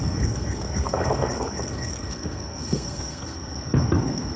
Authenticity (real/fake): fake